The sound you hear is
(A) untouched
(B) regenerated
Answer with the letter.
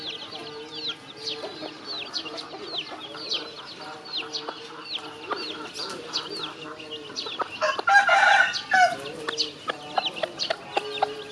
A